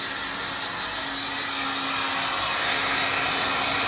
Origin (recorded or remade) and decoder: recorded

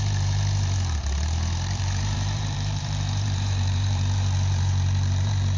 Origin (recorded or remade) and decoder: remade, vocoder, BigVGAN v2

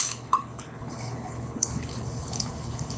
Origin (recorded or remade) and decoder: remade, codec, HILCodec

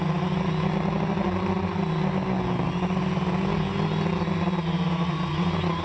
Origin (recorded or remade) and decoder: recorded